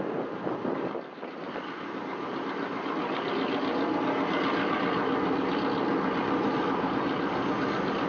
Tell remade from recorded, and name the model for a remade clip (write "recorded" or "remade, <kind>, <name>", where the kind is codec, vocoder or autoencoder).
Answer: recorded